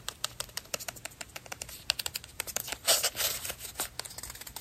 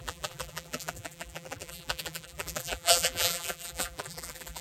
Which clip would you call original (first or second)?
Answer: first